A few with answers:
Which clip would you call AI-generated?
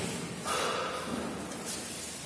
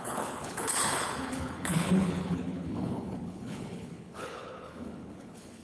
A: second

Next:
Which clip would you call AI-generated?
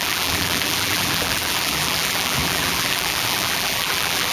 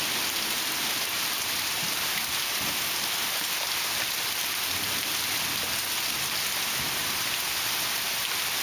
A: first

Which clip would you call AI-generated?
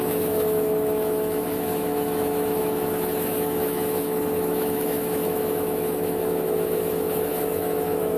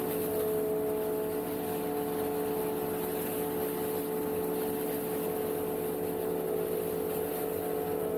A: first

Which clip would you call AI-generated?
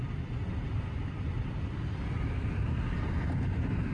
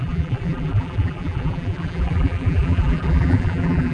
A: second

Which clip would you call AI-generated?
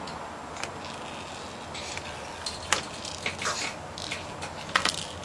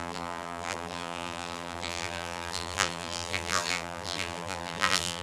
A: second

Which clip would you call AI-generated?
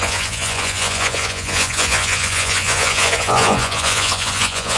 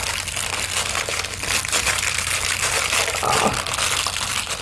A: first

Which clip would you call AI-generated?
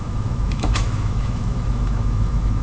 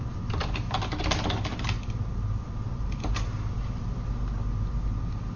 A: first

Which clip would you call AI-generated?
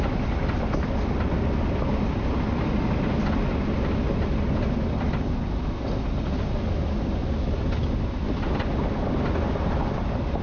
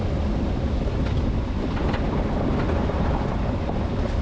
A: second